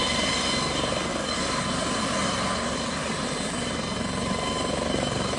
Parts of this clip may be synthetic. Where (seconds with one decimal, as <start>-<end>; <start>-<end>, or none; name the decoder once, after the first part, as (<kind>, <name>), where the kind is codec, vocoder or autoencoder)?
1.1-1.6 (codec, DAC)